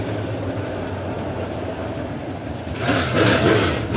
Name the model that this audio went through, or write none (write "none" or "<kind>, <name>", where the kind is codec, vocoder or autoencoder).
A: none